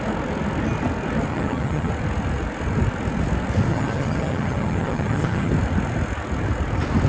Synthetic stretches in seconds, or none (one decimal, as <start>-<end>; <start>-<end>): 1.3-1.9; 3.7-5.5